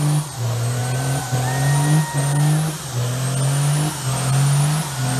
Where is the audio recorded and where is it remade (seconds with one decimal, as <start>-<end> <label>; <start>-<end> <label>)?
0.0-5.2 recorded